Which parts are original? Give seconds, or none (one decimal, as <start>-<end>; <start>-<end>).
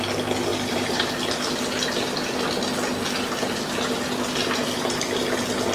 0.0-0.5; 1.1-5.7